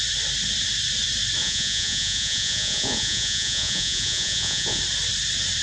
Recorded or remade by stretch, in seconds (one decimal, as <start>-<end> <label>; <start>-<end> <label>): 0.0-1.4 recorded; 1.4-4.8 remade; 4.8-5.6 recorded